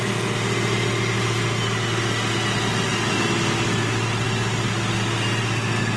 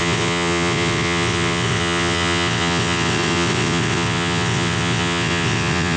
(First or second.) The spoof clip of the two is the second